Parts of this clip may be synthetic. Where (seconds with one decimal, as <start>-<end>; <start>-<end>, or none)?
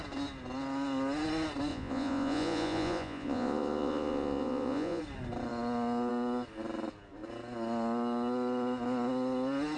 1.7-5.0